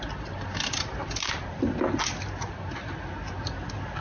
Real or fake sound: real